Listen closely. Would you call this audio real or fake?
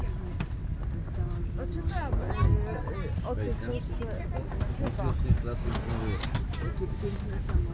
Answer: real